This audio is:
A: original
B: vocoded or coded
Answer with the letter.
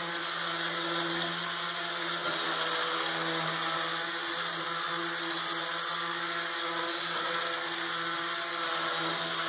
A